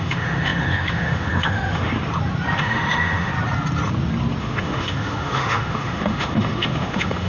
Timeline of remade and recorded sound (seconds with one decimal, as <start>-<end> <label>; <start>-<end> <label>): 0.0-1.9 remade; 1.9-2.6 recorded; 2.6-3.3 remade; 3.3-4.4 recorded; 4.4-7.3 remade